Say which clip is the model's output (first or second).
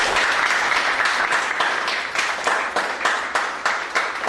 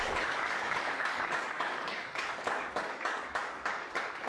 second